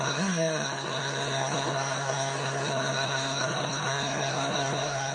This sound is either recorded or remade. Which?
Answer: remade